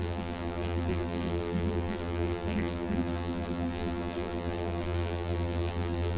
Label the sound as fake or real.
fake